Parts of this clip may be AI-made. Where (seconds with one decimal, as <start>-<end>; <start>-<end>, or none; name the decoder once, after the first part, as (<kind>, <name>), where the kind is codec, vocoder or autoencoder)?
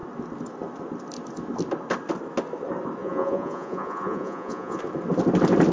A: 3.0-4.8 (vocoder, Vocos)